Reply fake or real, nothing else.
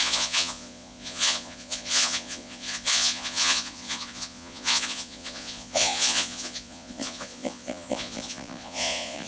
fake